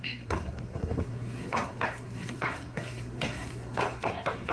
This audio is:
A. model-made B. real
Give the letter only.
A